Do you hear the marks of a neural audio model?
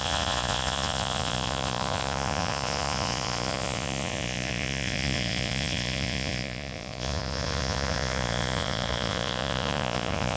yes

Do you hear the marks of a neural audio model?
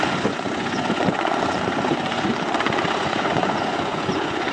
yes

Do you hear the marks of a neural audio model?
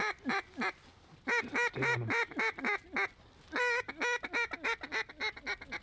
no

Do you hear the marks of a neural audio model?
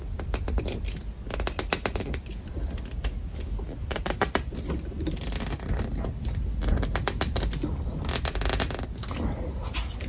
no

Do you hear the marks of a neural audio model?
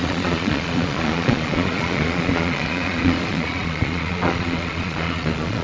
yes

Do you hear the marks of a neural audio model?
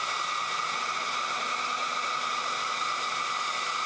no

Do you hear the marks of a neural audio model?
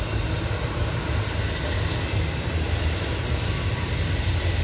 no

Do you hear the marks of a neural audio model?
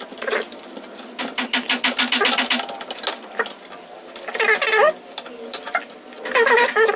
no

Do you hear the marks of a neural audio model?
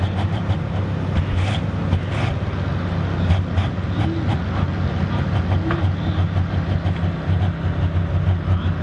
no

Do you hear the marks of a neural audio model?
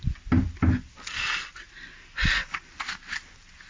no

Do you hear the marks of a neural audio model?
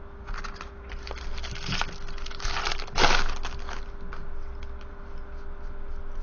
no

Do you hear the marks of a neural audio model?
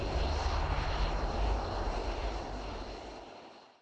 no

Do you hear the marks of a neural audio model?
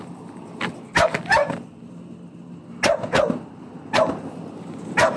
no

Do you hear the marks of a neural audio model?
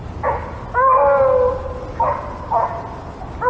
no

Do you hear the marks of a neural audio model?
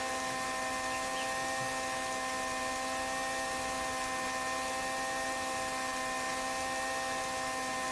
no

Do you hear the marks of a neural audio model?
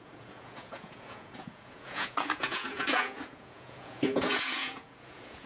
yes